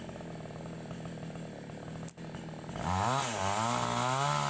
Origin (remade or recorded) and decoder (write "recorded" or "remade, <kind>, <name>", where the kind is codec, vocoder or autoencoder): recorded